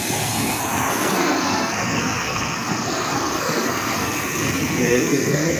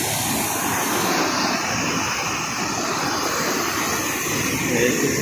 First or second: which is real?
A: second